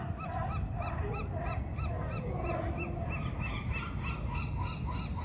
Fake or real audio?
real